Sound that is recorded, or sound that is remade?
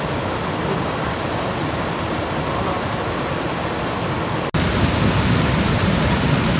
recorded